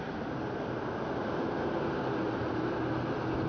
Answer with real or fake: real